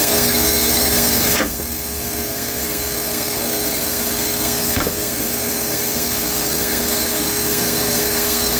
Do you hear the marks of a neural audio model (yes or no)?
yes